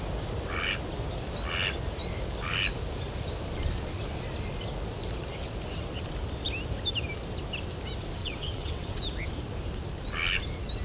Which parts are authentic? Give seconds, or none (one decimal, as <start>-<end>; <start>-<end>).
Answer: 0.0-8.2; 9.0-10.8